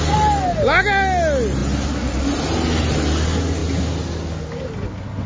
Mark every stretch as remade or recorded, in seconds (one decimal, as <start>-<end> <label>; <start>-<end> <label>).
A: 0.0-5.3 recorded